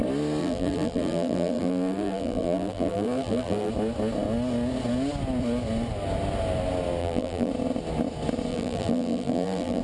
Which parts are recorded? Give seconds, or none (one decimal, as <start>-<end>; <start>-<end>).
0.0-0.4; 3.7-7.0; 7.5-8.5